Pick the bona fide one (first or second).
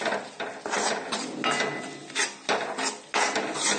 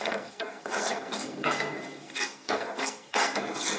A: first